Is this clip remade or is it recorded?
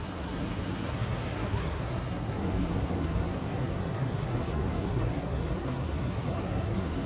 remade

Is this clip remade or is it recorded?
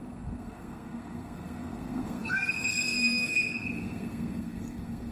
remade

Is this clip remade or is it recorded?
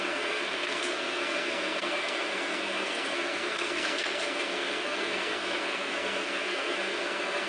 remade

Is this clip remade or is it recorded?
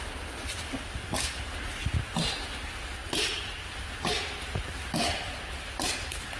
recorded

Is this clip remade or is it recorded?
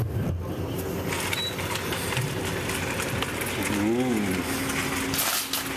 recorded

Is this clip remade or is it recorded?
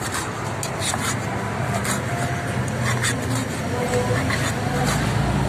recorded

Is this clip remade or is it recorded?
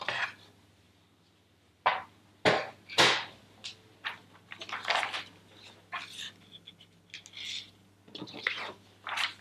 recorded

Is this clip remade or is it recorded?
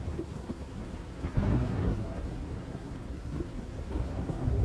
remade